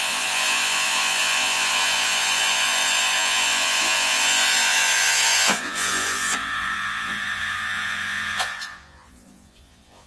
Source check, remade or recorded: remade